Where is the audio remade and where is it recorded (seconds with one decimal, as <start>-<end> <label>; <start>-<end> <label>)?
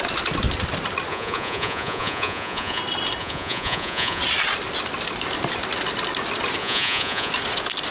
0.0-1.1 recorded; 1.1-2.8 remade; 2.8-3.2 recorded; 3.2-4.2 remade; 4.2-6.6 recorded; 6.6-7.3 remade; 7.3-7.9 recorded